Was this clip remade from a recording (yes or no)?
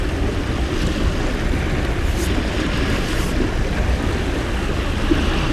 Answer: no